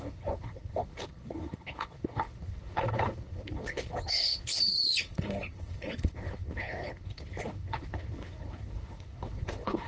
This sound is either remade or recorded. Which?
remade